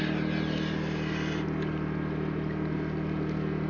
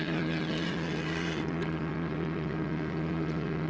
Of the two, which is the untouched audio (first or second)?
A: first